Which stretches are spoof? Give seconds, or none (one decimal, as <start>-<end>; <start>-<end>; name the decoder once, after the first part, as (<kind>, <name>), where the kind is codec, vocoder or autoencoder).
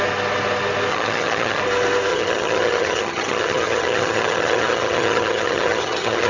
0.9-1.6 (vocoder, HiFi-GAN); 2.1-6.3